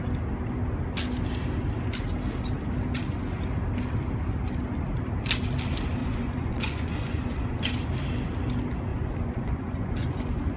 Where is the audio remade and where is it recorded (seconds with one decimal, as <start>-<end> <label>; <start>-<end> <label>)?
0.0-6.0 recorded; 6.0-7.6 remade; 7.6-8.9 recorded; 8.9-10.6 remade